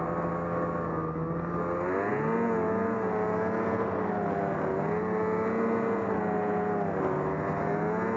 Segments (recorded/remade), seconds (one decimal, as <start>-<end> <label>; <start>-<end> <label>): 0.0-8.2 recorded